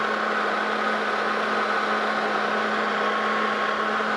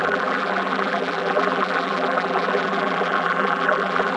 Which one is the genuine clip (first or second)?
first